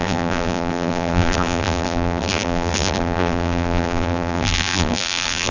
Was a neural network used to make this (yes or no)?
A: yes